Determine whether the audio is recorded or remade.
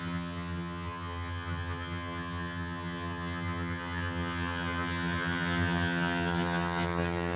remade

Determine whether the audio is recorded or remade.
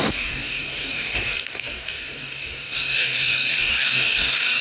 remade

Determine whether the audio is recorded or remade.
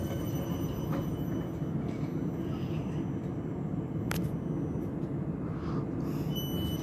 recorded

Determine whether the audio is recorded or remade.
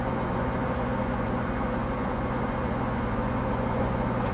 remade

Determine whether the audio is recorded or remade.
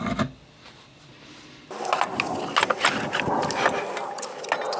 recorded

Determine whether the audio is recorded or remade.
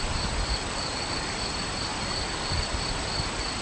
recorded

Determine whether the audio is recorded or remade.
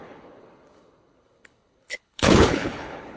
remade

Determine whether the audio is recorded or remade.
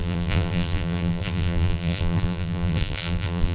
remade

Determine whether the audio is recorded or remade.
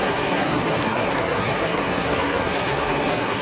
remade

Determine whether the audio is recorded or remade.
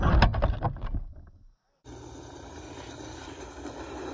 recorded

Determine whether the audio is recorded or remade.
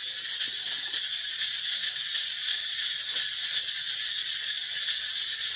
recorded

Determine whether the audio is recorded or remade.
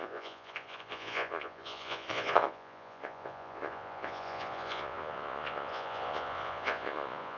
remade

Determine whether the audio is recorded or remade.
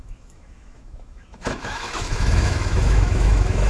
remade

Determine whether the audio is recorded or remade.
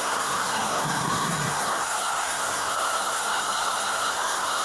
remade